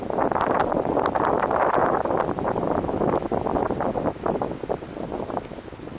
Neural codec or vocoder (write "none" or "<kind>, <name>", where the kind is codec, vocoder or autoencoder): none